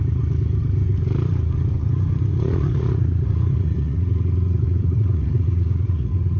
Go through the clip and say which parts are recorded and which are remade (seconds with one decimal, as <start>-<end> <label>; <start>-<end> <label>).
0.0-2.3 recorded; 2.3-6.4 remade